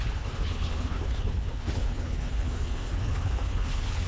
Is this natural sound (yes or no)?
no